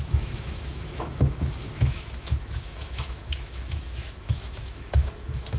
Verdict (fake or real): fake